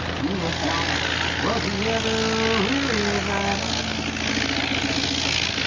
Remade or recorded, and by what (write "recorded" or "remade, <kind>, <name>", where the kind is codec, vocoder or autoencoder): recorded